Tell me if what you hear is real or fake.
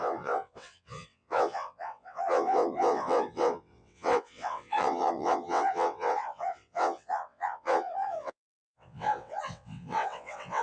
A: fake